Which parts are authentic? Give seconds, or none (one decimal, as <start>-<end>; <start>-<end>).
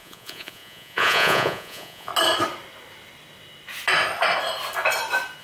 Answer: 2.1-5.4